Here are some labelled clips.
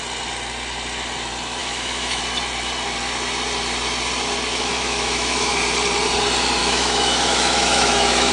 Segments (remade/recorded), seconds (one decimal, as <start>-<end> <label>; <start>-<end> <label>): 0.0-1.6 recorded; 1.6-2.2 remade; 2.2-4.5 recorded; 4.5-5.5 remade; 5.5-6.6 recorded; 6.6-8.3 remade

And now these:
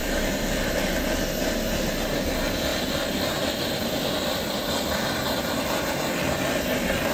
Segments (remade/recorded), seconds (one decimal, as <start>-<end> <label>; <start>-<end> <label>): 0.0-0.9 remade; 0.9-7.1 recorded

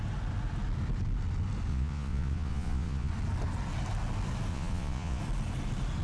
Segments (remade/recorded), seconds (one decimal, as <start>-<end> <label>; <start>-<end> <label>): 0.0-1.7 recorded; 1.7-3.1 remade; 3.1-4.5 recorded; 4.5-5.2 remade; 5.2-6.0 recorded